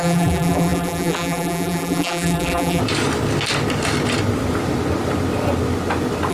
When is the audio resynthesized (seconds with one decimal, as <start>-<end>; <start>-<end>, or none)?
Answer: 0.0-2.8